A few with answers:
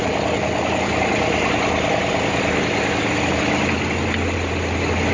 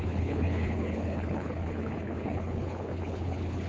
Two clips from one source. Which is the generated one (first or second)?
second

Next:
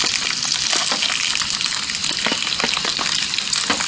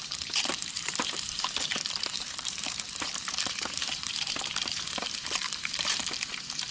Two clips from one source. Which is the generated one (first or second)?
second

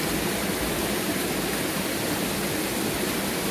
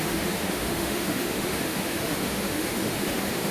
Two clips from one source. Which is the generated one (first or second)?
second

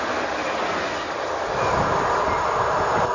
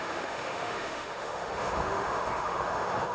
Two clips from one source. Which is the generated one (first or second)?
second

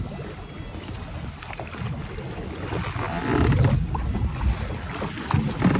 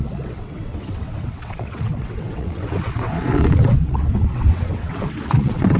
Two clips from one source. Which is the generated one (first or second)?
second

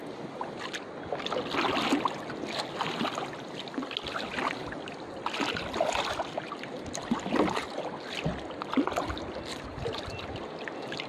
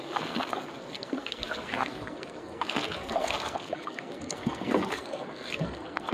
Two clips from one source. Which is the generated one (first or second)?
second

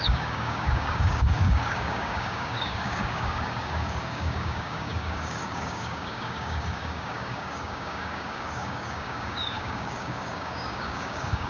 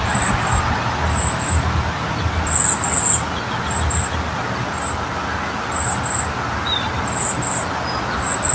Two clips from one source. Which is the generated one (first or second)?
first